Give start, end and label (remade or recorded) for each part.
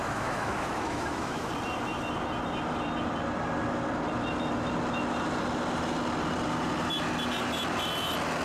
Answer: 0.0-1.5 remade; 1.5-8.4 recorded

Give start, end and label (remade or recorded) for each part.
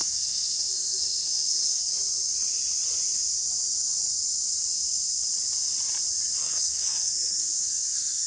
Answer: 0.0-1.9 remade; 1.9-6.4 recorded; 6.4-8.3 remade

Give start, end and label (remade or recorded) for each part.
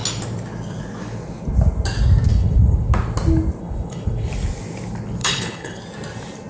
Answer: 0.0-2.3 recorded; 2.3-2.9 remade; 2.9-3.6 recorded; 3.6-4.3 remade; 4.3-5.2 recorded; 5.2-5.8 remade; 5.8-6.5 recorded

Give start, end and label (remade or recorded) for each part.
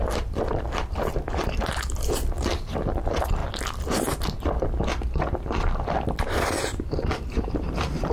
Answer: 0.0-3.4 remade; 3.4-6.2 recorded; 6.2-8.1 remade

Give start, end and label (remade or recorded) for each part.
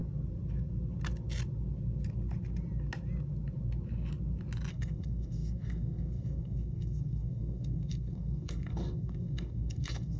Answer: 0.0-4.7 recorded; 4.7-10.2 remade